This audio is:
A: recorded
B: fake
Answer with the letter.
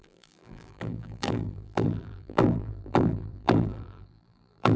B